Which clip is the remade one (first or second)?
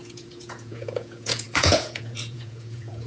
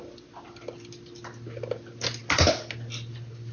first